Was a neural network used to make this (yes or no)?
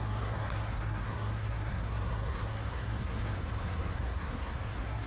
yes